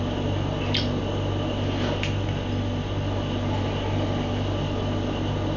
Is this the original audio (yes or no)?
yes